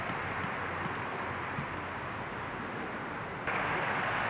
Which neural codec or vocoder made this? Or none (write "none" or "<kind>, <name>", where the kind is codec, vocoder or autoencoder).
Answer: none